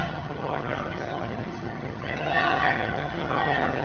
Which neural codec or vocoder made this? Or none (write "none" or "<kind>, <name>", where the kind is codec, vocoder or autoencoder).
vocoder, HiFi-GAN